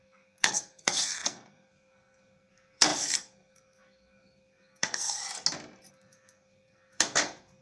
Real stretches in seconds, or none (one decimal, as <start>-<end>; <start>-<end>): 5.2-5.9